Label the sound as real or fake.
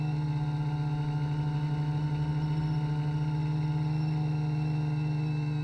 real